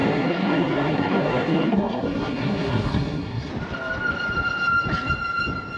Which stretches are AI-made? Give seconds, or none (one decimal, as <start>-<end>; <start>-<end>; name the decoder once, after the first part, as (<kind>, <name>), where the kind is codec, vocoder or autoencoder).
0.0-3.5 (codec, SNAC)